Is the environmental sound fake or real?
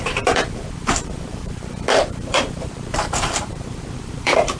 fake